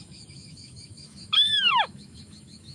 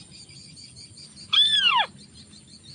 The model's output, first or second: first